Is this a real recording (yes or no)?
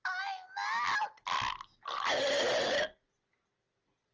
yes